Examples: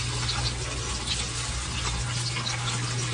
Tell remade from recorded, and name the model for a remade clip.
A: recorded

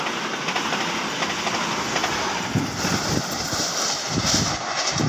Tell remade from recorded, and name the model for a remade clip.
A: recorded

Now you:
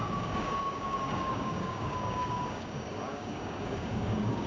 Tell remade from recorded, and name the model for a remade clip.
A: remade, codec, DAC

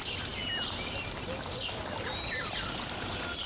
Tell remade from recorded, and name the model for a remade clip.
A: recorded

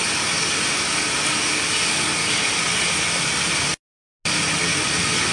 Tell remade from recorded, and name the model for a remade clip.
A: recorded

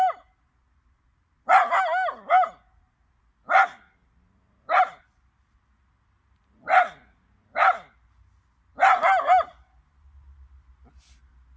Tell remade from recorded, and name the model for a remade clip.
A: recorded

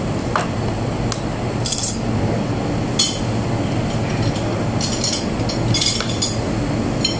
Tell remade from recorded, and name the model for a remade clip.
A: recorded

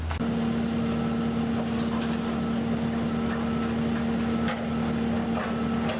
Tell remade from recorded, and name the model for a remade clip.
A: recorded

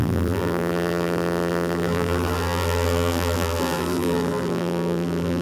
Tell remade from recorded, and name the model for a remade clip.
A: remade, vocoder, BigVGAN v2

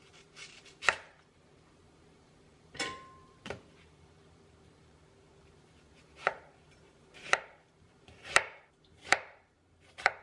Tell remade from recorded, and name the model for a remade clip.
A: remade, vocoder, BigVGAN v2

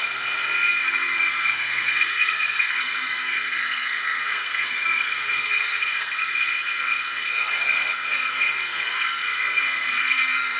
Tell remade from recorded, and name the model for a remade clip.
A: remade, codec, SNAC